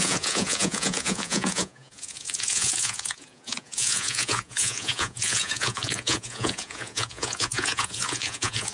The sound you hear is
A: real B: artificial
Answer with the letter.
B